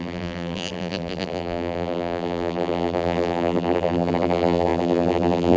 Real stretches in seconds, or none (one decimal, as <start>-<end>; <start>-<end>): none